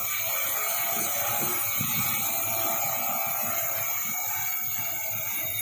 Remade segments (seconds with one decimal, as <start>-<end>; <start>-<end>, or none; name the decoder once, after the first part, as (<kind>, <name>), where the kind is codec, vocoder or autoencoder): none